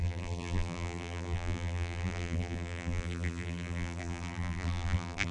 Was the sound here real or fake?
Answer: fake